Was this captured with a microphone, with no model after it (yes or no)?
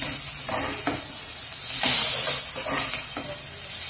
yes